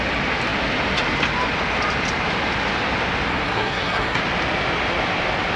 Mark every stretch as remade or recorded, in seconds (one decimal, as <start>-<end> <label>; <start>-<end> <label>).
0.0-3.3 recorded; 3.3-4.2 remade; 4.2-5.6 recorded